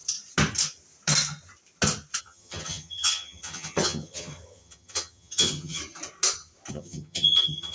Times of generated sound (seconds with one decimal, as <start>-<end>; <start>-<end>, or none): 2.2-5.8; 6.7-7.7